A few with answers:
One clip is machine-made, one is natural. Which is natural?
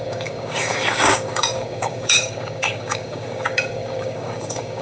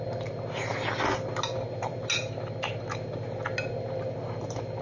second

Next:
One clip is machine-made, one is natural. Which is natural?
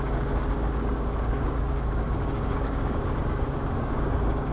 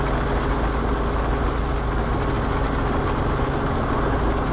second